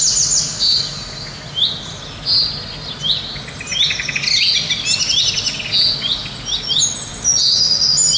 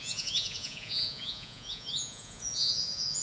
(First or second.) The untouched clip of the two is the first